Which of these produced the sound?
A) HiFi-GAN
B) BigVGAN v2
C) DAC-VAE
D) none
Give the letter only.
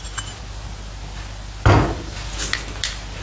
D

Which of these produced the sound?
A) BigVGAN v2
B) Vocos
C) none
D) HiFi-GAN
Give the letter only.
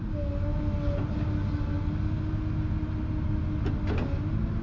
C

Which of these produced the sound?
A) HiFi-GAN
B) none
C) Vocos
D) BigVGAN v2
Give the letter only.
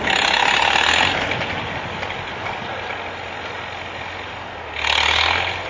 B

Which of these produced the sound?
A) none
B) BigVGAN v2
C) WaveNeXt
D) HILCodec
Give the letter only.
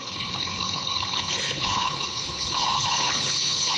D